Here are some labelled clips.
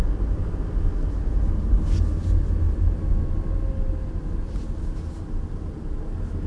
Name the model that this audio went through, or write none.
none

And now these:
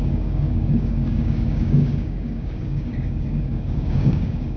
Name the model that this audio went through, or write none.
codec, DAC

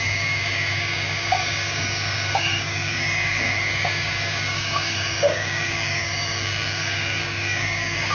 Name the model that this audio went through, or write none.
codec, DAC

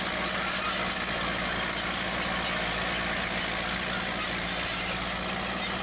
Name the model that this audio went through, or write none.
none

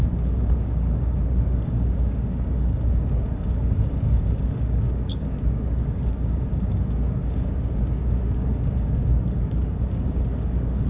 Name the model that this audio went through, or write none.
codec, DAC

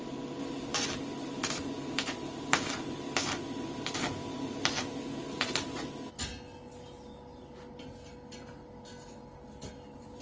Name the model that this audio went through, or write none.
none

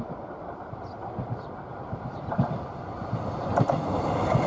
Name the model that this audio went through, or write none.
none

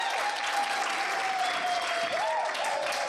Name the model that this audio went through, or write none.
none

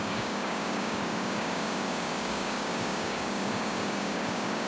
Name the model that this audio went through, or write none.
codec, DAC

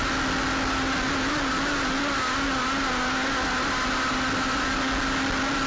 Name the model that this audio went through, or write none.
none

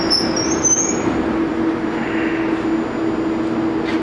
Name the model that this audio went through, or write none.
none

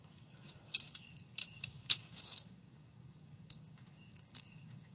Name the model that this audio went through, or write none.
codec, DAC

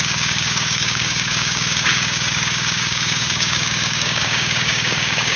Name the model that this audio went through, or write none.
codec, DAC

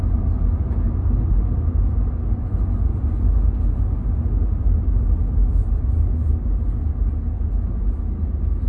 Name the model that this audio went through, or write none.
none